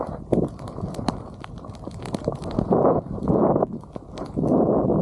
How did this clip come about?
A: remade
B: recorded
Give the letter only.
B